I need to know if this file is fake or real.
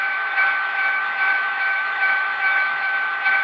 fake